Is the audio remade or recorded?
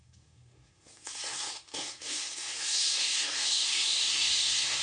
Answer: remade